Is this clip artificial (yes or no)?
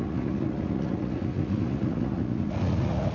yes